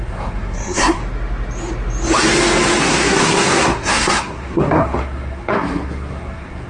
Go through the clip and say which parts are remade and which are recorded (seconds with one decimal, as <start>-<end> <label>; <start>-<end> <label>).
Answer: 0.0-1.0 remade; 1.0-2.8 recorded; 2.8-6.7 remade